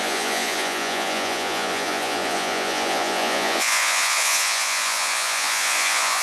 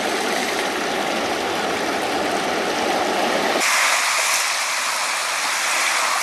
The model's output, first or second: first